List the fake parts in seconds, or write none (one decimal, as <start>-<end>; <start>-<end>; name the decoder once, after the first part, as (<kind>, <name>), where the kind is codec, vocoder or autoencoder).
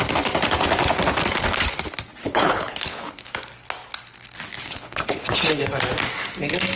2.2-3.4 (codec, HILCodec); 4.6-5.5